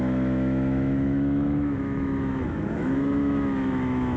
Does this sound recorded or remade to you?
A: remade